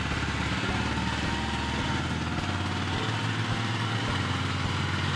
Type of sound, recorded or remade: recorded